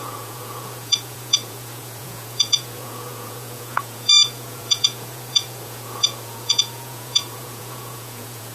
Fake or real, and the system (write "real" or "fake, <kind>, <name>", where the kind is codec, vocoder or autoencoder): fake, vocoder, Vocos